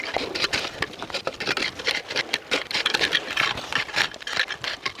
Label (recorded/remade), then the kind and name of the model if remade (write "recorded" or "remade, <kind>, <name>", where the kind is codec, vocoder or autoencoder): recorded